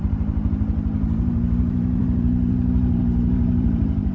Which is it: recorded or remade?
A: remade